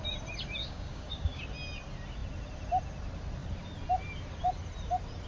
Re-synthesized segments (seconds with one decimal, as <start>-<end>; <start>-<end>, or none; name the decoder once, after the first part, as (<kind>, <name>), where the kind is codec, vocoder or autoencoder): 0.6-1.4 (codec, DAC)